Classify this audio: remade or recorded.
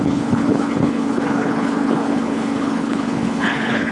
remade